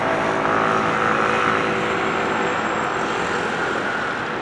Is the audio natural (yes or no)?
yes